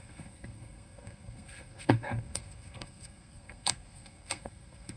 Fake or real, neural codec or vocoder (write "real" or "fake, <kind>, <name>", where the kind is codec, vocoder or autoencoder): fake, codec, SNAC